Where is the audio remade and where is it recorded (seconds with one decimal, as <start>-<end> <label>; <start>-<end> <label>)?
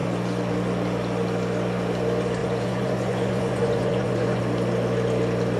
0.0-2.4 recorded; 2.4-4.4 remade; 4.4-5.6 recorded